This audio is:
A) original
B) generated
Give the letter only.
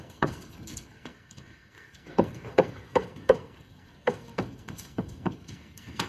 B